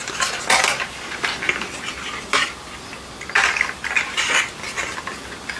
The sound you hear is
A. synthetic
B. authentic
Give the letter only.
B